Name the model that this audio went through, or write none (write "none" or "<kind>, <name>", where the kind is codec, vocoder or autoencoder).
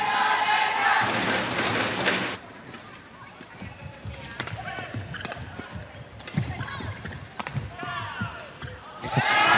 none